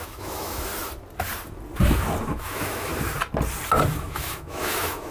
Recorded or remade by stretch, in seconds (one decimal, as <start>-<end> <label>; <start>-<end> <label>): 0.0-0.7 remade; 0.7-2.3 recorded; 2.3-2.9 remade; 2.9-4.0 recorded; 4.0-5.1 remade